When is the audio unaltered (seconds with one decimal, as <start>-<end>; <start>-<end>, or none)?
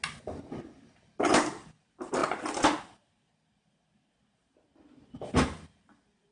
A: 0.0-6.3